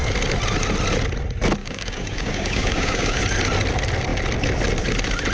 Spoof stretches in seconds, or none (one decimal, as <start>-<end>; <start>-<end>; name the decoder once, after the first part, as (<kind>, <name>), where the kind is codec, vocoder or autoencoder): 1.6-3.2 (codec, DAC)